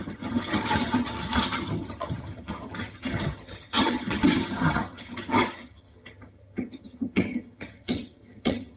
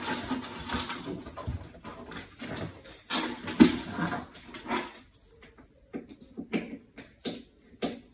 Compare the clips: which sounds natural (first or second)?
second